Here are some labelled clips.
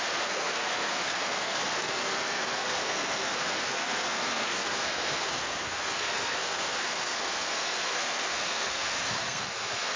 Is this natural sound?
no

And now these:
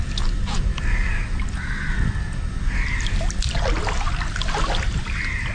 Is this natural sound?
yes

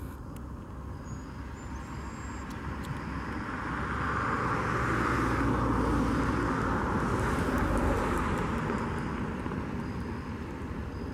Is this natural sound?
yes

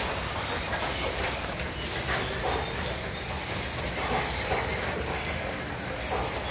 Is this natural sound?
yes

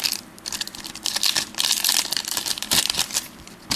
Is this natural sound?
no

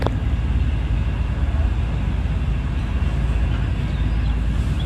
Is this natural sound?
yes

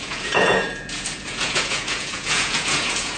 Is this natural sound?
no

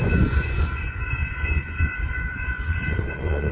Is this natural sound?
no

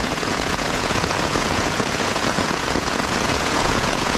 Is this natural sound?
no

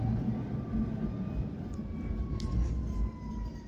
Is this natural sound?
yes